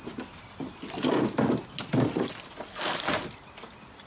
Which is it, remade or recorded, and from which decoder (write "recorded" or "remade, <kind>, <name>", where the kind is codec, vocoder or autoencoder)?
recorded